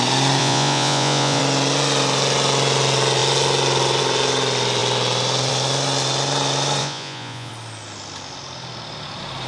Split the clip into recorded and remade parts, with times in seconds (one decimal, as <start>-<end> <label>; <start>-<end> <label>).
0.0-0.4 recorded; 0.4-1.4 remade; 1.4-6.8 recorded; 6.8-7.5 remade; 7.5-9.5 recorded